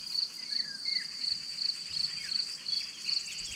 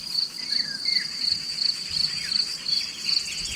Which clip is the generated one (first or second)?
second